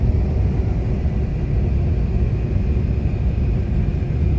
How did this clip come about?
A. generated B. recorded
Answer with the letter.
B